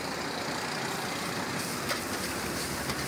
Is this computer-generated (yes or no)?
no